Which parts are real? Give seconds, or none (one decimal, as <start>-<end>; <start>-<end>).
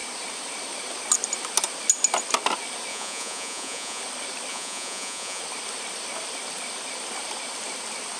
0.0-2.9; 4.0-4.5; 5.4-8.2